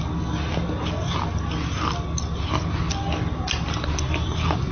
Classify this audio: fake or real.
real